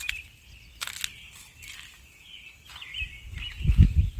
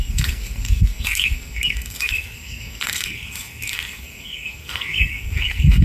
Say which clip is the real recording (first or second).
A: first